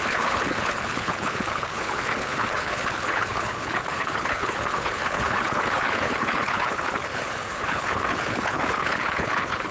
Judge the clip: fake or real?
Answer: fake